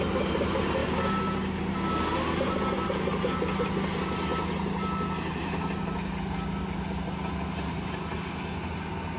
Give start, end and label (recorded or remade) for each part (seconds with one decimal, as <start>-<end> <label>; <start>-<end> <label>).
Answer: 0.0-9.2 recorded